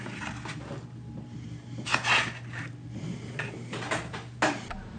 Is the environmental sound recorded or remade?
recorded